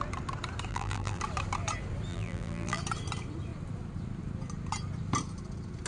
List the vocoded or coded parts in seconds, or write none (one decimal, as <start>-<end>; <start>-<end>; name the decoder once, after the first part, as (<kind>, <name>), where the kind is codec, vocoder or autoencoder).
0.7-1.2 (vocoder, BigVGAN v2); 2.1-2.8